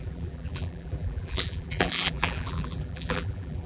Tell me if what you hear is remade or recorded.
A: remade